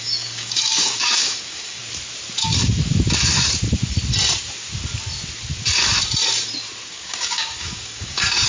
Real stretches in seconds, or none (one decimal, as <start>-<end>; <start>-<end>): 1.8-6.9